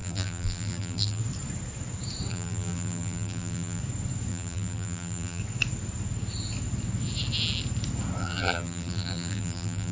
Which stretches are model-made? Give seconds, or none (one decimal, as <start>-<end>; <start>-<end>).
0.0-1.2; 2.3-3.8; 4.3-5.4; 8.2-9.9

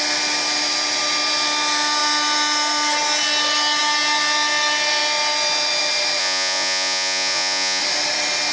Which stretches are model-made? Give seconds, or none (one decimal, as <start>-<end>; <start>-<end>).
6.2-7.8

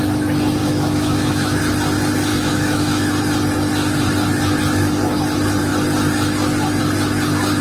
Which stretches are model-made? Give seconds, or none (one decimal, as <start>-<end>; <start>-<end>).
0.6-1.6; 2.3-3.1

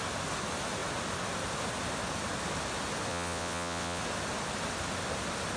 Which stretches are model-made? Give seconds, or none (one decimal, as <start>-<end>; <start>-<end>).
3.1-4.0

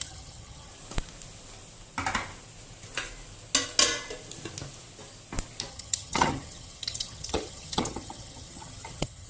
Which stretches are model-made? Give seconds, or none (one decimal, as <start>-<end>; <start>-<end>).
0.0-0.7; 5.7-9.3

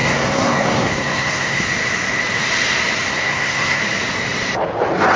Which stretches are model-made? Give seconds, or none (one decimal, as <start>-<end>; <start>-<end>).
0.0-1.6; 3.1-3.8